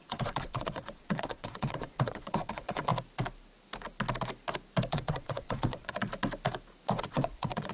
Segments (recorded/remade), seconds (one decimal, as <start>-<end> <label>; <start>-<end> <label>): 0.0-2.9 remade; 2.9-4.9 recorded; 4.9-6.1 remade; 6.1-7.0 recorded; 7.0-7.7 remade